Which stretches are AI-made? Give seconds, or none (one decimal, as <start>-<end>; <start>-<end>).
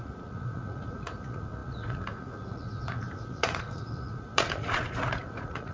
0.0-5.7